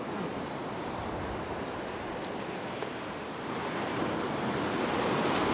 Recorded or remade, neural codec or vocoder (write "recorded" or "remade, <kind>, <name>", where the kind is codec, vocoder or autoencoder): recorded